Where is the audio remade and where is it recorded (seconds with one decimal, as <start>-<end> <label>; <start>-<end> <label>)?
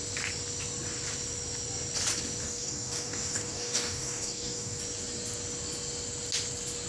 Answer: 0.0-2.4 recorded; 2.4-4.8 remade; 4.8-6.9 recorded